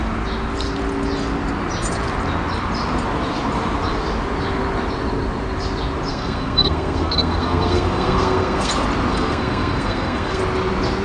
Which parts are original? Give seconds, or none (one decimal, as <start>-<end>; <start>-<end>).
0.0-6.1; 8.7-9.1; 10.4-11.0